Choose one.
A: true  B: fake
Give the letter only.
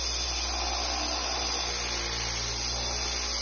A